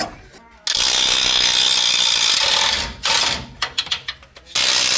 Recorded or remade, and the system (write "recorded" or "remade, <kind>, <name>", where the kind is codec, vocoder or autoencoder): recorded